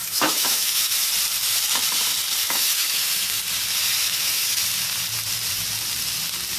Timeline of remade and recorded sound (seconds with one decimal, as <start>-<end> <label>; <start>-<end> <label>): 0.0-1.1 remade; 1.1-2.4 recorded; 2.4-3.4 remade; 3.4-4.0 recorded; 4.0-4.6 remade; 4.6-6.6 recorded